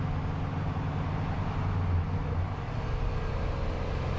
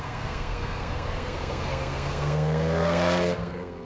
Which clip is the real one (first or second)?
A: first